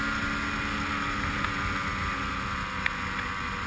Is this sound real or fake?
real